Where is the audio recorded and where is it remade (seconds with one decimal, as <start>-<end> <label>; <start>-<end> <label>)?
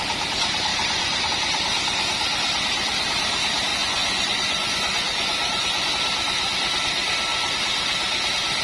0.0-0.7 recorded; 0.7-1.3 remade; 1.3-3.7 recorded; 3.7-5.9 remade; 5.9-8.6 recorded